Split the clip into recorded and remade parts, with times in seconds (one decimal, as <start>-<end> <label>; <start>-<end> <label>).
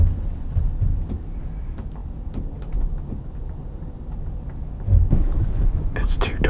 0.0-6.5 recorded